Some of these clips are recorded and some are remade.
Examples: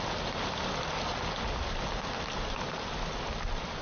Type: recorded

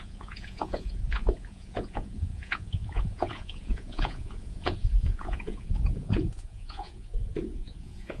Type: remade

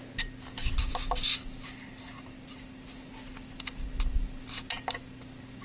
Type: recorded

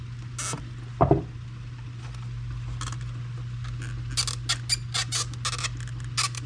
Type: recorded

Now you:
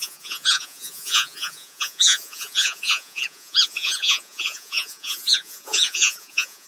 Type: remade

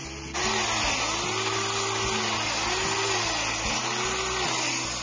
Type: recorded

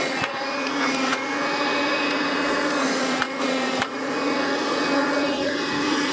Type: remade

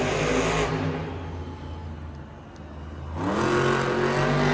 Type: recorded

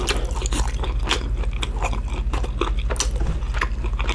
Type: recorded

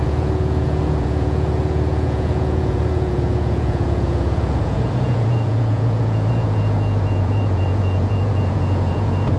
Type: remade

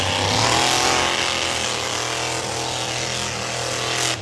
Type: recorded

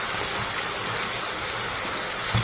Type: recorded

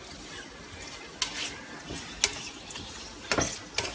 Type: recorded